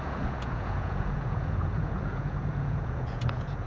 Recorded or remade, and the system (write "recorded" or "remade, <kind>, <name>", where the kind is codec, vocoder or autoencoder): remade, vocoder, Vocos